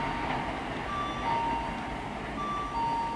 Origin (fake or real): real